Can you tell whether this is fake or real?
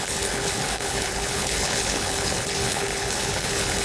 fake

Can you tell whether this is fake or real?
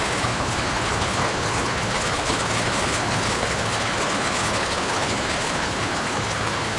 fake